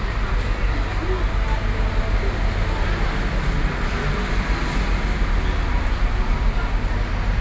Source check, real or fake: real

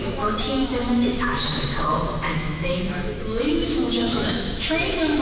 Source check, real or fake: fake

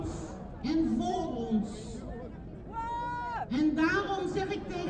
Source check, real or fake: real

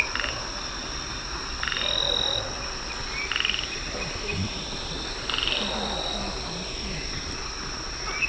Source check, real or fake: real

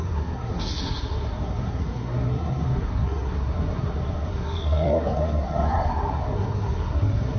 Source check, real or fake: fake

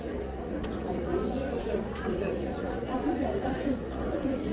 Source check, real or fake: fake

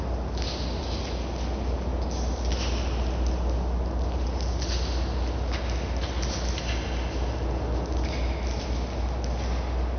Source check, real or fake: real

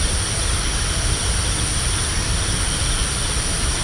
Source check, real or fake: real